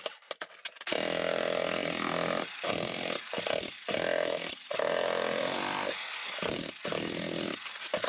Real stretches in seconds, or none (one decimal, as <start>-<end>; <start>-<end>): 0.0-8.1

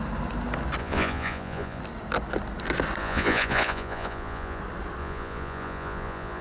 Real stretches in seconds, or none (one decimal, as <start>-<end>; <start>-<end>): 0.0-0.8; 1.8-3.0; 4.6-5.0

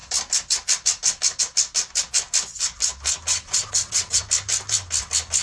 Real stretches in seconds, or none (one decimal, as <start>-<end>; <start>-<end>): 0.0-3.3; 4.2-5.4

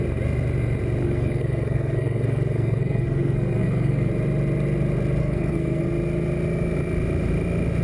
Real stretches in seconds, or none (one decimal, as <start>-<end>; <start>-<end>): 0.0-1.0; 4.1-5.2; 5.8-7.8

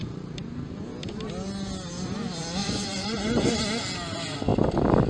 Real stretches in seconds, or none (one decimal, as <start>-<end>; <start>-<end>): 0.0-2.6; 3.6-5.1